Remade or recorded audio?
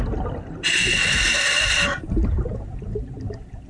recorded